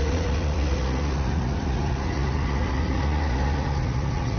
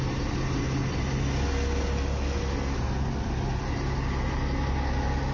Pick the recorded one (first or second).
second